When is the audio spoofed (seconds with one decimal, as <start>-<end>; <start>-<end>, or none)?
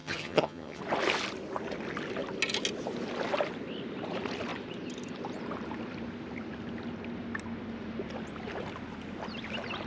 0.0-0.8